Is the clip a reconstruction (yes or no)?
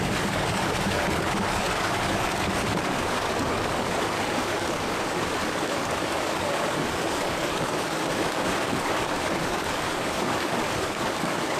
yes